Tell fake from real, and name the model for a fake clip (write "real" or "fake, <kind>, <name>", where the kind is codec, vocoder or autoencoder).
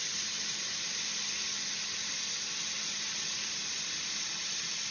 real